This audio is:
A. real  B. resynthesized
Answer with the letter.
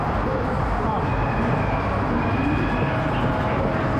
A